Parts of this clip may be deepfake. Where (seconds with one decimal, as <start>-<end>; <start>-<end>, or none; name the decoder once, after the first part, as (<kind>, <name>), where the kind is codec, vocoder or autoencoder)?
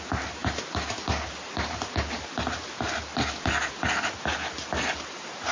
none